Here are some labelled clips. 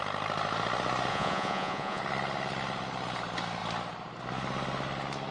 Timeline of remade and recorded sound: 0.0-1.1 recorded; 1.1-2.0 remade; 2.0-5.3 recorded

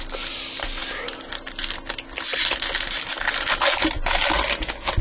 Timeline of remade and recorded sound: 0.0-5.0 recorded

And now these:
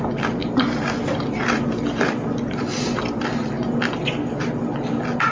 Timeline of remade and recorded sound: 0.0-5.3 recorded

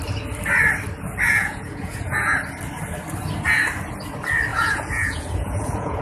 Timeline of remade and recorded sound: 0.0-1.3 recorded; 1.3-2.4 remade; 2.4-4.5 recorded; 4.5-6.0 remade

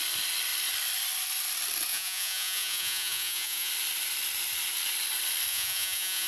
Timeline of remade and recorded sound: 0.0-1.9 recorded; 1.9-3.7 remade; 3.7-5.5 recorded; 5.5-6.3 remade

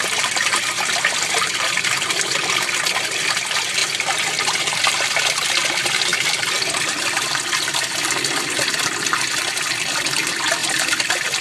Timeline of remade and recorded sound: 0.0-11.4 recorded

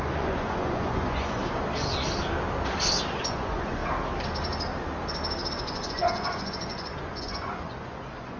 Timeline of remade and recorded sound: 0.0-1.4 remade; 1.4-3.2 recorded; 3.2-3.8 remade; 3.8-5.6 recorded; 5.6-8.4 remade

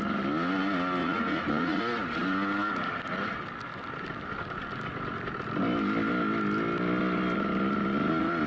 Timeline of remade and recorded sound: 0.0-1.0 recorded; 1.0-1.8 remade; 1.8-8.5 recorded